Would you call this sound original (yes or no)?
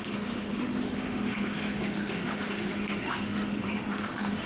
no